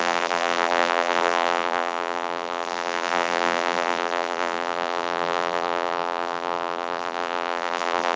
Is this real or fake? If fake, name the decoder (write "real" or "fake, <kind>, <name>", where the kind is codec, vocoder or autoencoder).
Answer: fake, vocoder, BigVGAN v2